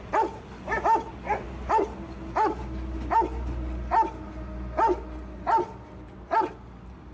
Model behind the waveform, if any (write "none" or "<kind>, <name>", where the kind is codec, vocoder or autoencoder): none